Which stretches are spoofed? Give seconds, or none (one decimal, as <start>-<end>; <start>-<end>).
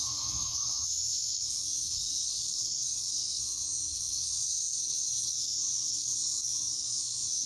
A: 0.0-7.5